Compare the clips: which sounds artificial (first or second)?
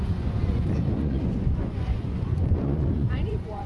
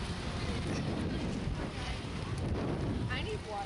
first